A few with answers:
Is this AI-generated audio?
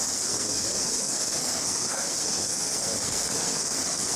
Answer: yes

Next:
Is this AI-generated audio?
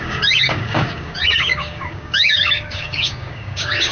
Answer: yes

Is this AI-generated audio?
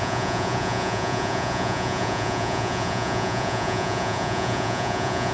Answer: yes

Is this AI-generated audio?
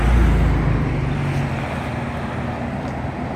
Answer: no